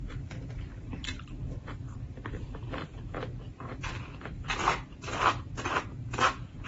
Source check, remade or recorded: remade